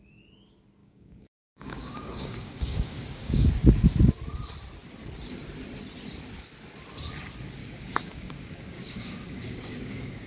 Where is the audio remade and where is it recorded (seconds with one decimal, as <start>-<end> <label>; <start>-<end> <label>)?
0.0-0.8 recorded; 0.8-3.5 remade; 3.5-7.6 recorded; 7.6-10.3 remade